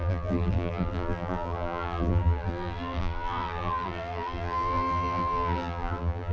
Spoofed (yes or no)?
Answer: yes